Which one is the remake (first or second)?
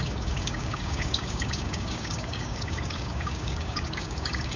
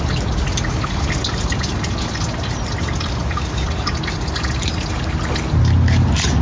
first